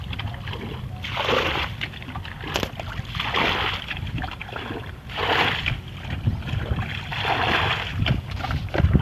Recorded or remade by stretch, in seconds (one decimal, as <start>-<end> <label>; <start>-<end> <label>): 0.0-9.0 recorded